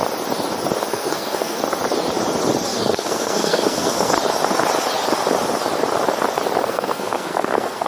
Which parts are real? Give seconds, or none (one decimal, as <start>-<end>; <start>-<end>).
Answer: 0.0-0.9; 1.6-2.7; 4.1-6.6